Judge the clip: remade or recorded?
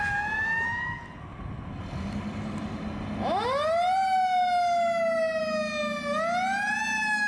recorded